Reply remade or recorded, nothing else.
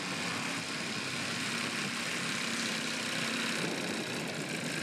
recorded